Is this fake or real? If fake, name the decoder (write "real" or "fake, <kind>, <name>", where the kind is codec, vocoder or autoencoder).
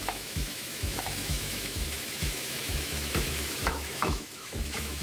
fake, autoencoder, DAC-VAE